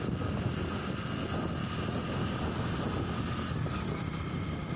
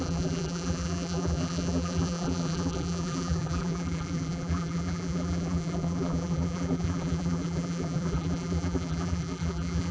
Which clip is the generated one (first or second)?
second